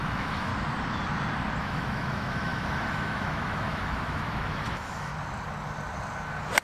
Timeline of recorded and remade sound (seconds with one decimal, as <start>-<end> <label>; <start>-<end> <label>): 0.0-0.5 remade; 0.5-1.6 recorded; 1.6-5.1 remade; 5.1-6.6 recorded